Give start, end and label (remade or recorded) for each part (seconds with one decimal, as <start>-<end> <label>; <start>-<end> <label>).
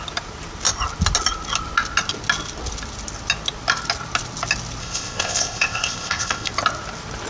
0.0-4.8 recorded; 4.8-6.5 remade; 6.5-7.3 recorded